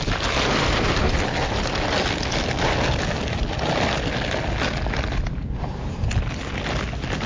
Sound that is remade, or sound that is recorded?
recorded